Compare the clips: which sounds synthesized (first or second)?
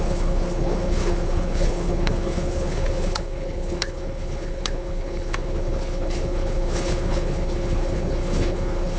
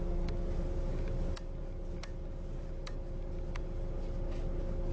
first